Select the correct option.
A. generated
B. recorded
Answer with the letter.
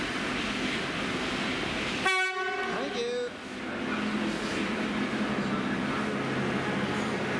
B